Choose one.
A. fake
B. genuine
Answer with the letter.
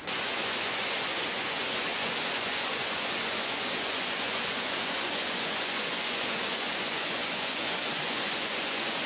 A